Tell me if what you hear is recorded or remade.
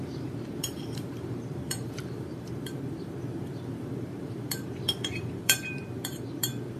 remade